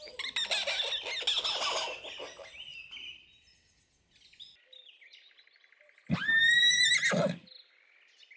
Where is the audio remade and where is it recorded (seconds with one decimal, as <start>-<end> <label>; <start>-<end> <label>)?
0.0-8.4 recorded